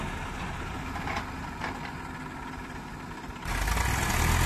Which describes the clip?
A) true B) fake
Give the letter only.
A